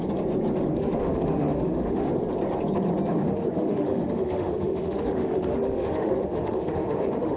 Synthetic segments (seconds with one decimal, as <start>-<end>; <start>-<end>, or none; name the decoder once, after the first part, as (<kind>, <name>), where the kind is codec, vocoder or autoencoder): 0.7-2.1 (autoencoder, DAC-VAE); 3.2-7.4